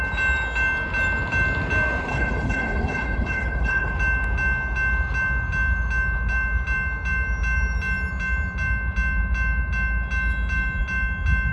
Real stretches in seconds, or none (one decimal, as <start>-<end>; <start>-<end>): 0.0-2.1; 3.9-11.5